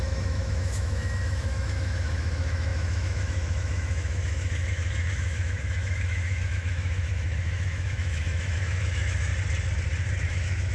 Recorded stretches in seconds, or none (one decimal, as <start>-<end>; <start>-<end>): 9.3-10.2